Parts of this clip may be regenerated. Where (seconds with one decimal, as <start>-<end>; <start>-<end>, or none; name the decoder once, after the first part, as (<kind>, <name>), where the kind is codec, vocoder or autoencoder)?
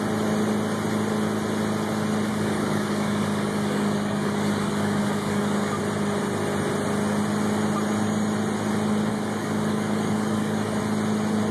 2.3-5.8 (codec, DAC); 9.1-10.8